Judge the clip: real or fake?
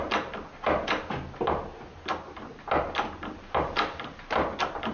real